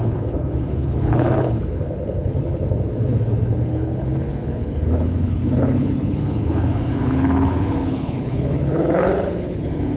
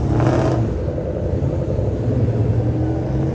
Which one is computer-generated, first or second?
first